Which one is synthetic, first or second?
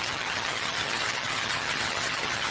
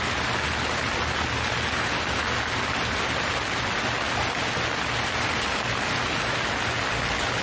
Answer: first